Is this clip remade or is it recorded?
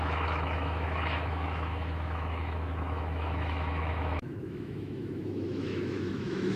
remade